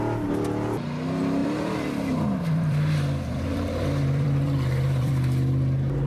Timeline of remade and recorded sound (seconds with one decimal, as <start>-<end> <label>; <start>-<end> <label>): 0.0-1.4 recorded; 1.4-5.1 remade; 5.1-6.1 recorded